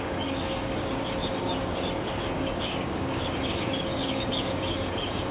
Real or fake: fake